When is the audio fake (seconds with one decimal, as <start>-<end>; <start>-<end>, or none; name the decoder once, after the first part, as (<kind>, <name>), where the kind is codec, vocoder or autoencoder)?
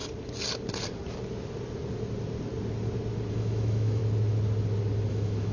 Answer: 3.3-4.0 (autoencoder, DAC-VAE); 5.1-5.5